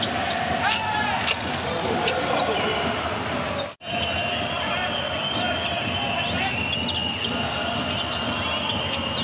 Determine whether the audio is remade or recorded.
recorded